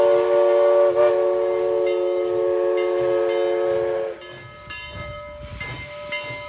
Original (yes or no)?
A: yes